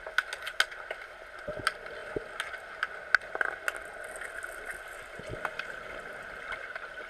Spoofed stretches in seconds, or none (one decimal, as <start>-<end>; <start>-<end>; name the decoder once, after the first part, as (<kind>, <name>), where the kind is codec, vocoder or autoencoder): none